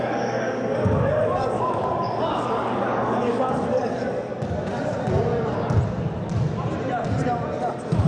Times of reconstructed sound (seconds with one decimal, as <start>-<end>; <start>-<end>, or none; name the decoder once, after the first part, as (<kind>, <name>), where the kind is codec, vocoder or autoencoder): 0.0-4.3 (codec, DAC); 7.6-8.1

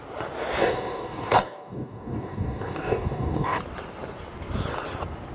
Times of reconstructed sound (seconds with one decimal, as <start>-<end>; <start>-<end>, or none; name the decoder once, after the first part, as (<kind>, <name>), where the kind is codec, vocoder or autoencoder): 0.6-3.6 (codec, DAC)

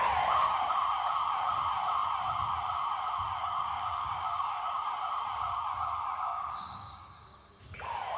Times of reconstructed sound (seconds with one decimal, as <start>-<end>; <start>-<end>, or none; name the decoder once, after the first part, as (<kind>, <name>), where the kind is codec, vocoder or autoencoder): 3.4-4.8 (codec, DAC); 6.3-7.6